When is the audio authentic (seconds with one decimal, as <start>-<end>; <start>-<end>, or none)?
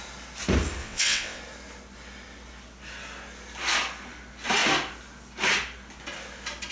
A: 0.0-0.8; 1.4-6.7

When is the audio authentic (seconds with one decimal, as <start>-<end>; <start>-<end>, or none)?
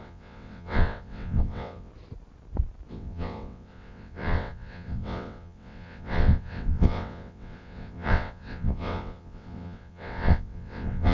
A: 1.9-2.9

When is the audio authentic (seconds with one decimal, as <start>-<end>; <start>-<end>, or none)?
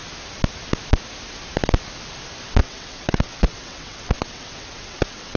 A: 0.0-2.6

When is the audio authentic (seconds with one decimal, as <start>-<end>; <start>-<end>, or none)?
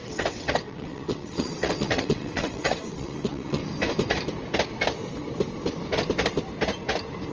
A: 3.6-7.3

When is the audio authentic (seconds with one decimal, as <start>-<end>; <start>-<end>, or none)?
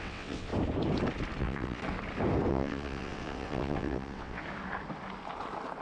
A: 0.5-1.4; 1.8-2.5; 4.4-5.8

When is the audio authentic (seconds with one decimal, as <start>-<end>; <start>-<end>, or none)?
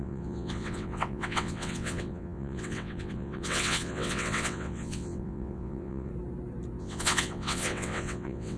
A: 6.1-6.8